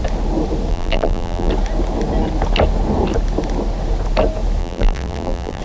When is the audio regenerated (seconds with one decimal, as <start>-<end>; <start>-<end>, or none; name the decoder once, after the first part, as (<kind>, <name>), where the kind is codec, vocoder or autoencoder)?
0.7-1.5 (vocoder, BigVGAN v2); 4.6-5.6

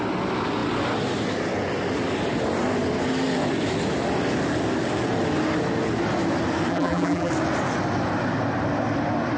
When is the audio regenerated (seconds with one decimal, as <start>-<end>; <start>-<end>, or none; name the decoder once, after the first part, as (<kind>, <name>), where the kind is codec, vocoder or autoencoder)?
6.7-7.3 (vocoder, BigVGAN v2)

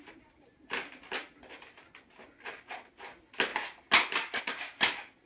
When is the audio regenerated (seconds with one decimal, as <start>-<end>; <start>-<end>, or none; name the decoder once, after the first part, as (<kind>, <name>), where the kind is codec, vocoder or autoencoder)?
none